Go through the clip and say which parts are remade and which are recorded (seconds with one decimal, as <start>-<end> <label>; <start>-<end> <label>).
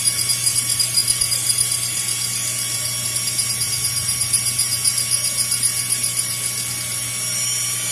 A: 0.0-7.9 recorded